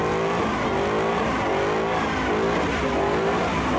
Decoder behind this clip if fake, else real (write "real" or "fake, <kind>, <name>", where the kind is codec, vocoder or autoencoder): real